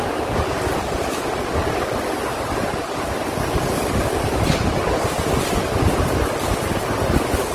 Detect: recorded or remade recorded